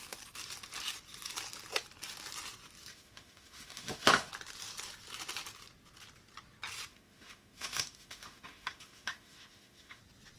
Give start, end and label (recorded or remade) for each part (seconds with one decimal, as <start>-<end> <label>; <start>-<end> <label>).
0.0-2.9 recorded; 2.9-4.3 remade; 4.3-6.9 recorded; 6.9-10.0 remade; 10.0-10.4 recorded